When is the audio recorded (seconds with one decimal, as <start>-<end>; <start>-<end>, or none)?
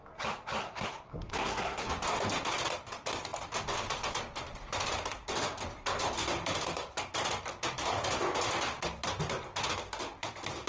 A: 0.0-0.6; 1.9-10.7